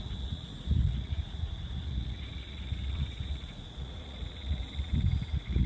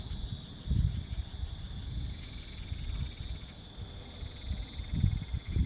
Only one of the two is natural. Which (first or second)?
second